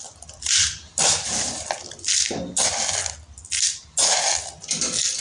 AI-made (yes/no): no